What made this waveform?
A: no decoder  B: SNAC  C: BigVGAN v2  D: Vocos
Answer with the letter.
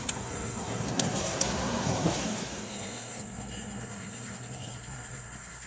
B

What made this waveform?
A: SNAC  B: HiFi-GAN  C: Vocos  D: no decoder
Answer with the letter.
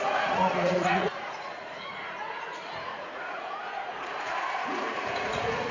C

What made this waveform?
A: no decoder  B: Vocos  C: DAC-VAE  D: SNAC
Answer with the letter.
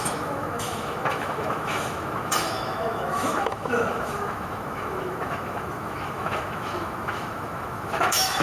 C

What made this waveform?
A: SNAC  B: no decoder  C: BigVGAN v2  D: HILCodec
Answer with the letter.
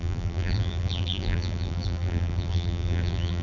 C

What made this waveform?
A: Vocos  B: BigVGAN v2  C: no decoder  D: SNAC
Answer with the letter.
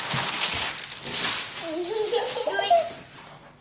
C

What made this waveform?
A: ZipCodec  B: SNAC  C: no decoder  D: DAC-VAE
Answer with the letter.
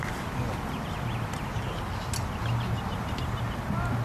C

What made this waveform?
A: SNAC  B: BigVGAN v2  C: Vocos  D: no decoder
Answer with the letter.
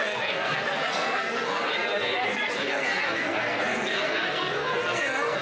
A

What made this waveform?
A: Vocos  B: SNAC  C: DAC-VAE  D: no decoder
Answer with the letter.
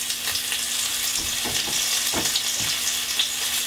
D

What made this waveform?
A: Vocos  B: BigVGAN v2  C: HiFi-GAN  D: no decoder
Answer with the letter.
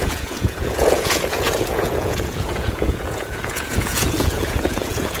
A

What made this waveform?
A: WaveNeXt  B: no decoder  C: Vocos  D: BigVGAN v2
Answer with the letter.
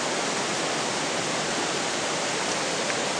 B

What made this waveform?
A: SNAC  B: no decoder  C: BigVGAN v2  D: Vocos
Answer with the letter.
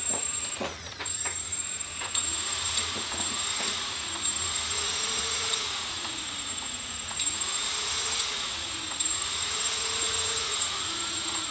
D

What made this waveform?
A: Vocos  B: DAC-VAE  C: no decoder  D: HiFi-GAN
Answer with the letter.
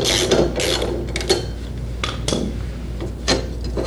C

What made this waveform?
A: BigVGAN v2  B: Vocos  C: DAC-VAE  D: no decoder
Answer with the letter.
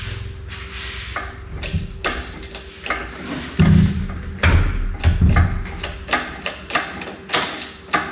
D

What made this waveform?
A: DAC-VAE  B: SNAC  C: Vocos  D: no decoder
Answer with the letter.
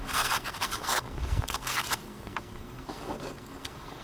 B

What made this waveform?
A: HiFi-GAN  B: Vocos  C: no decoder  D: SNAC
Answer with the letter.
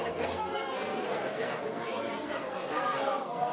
D